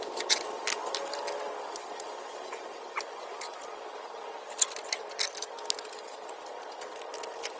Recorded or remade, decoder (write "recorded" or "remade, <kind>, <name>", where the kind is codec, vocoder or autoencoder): recorded